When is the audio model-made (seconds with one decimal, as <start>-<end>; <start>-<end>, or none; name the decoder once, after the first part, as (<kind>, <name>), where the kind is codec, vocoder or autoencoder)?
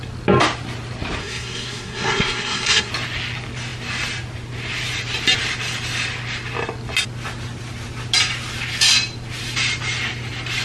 1.2-2.9 (codec, SNAC)